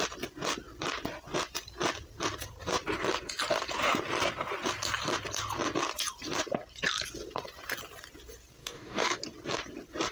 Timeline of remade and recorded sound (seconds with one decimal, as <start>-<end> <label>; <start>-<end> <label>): 0.0-8.6 recorded; 8.6-9.2 remade; 9.2-10.1 recorded